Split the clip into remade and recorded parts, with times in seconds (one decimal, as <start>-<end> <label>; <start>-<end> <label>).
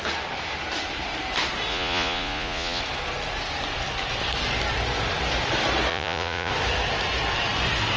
0.0-1.7 recorded; 1.7-2.8 remade; 2.8-5.9 recorded; 5.9-6.5 remade; 6.5-8.0 recorded